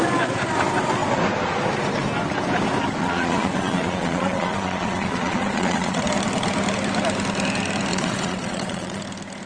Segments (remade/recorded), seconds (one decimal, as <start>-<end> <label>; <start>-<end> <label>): 0.0-3.0 recorded; 3.0-6.0 remade; 6.0-7.9 recorded; 7.9-9.0 remade; 9.0-9.5 recorded